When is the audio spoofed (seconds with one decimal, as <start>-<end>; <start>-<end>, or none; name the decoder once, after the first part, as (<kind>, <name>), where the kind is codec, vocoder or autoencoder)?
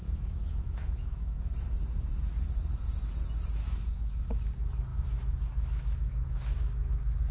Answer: 0.0-1.5 (autoencoder, DAC-VAE); 3.6-4.4; 4.9-7.3